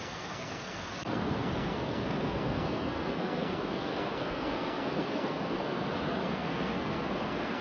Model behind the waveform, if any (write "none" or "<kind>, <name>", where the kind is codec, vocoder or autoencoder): codec, SNAC